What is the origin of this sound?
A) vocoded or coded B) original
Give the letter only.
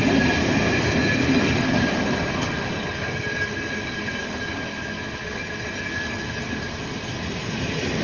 B